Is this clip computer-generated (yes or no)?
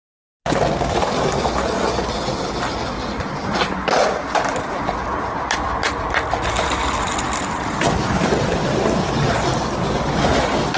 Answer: no